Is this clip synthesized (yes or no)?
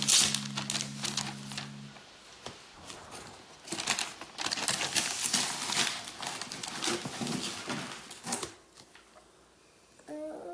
no